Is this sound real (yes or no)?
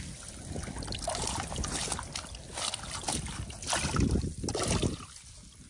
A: yes